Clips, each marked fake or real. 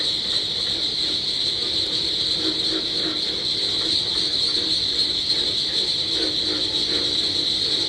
real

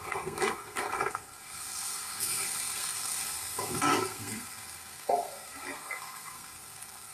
fake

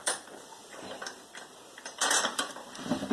fake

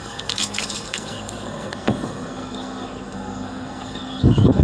fake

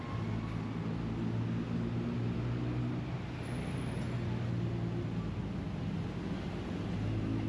real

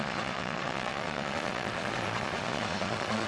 fake